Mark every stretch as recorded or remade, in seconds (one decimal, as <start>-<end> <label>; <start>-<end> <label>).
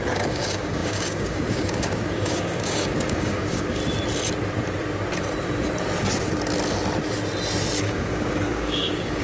0.0-3.8 remade; 3.8-7.8 recorded; 7.8-9.2 remade